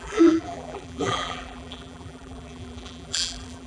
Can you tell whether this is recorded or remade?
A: remade